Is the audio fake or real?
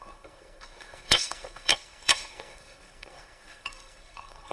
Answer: fake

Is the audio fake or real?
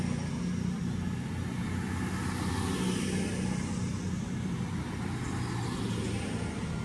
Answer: real